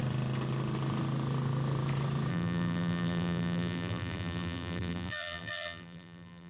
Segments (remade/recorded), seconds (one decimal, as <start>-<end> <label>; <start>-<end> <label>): 0.0-2.3 recorded; 2.3-6.5 remade